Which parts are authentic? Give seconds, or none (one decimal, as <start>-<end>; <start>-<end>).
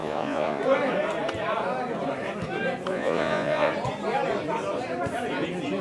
0.6-2.9; 3.7-5.8